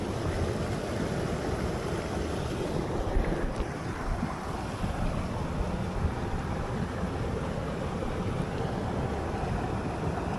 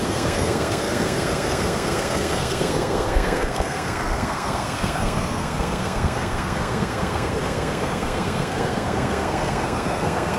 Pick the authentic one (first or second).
first